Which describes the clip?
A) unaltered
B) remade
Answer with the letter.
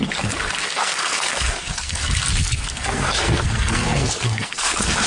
B